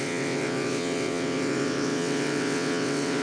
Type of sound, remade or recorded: remade